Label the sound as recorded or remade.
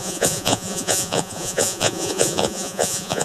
remade